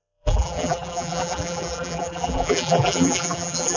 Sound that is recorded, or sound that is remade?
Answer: remade